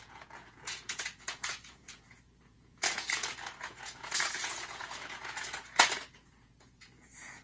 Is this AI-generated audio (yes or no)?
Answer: yes